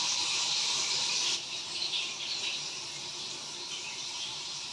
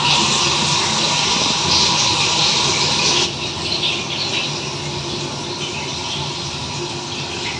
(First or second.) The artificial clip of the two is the first